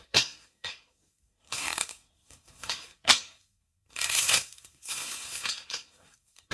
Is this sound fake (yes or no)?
yes